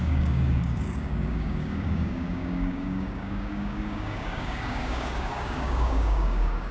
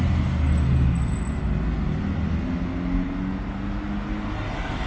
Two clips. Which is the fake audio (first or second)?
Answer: first